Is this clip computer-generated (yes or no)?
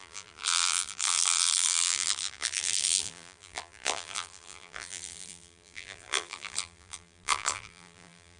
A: yes